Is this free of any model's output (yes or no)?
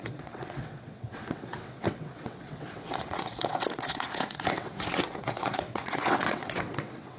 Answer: no